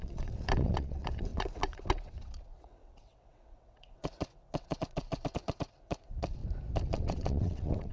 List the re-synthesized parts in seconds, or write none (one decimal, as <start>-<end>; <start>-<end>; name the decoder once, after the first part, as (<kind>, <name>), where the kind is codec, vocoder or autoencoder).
0.0-6.4 (vocoder, WaveNeXt); 6.9-7.9